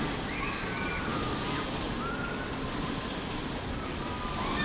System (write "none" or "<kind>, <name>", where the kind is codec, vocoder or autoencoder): none